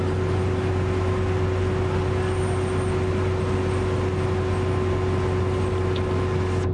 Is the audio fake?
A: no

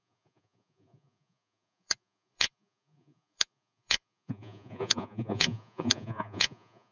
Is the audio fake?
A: yes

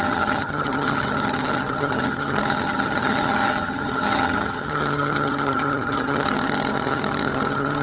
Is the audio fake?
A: yes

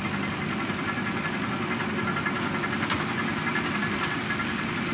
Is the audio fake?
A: no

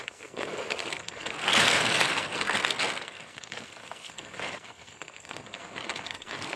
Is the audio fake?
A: yes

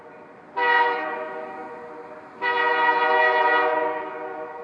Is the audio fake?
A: no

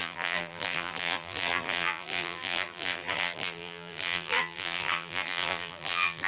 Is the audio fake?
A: yes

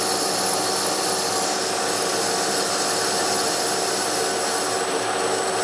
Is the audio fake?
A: no